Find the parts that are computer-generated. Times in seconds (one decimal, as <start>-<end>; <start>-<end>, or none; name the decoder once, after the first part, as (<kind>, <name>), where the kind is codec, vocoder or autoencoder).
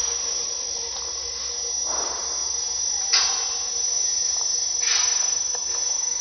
none